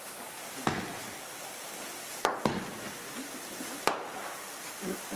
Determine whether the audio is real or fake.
real